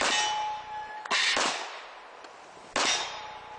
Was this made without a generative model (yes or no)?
yes